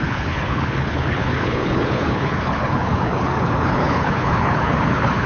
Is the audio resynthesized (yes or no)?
yes